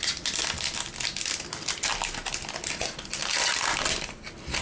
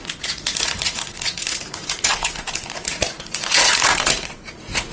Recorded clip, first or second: first